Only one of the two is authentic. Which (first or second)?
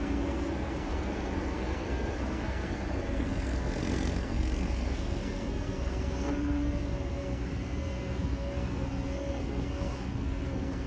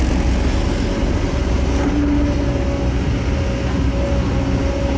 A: second